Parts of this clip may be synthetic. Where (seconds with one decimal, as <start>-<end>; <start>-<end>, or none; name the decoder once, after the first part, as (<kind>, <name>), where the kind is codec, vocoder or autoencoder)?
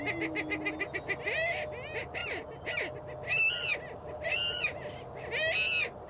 none